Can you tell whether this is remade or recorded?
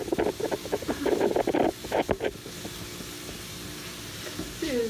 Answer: recorded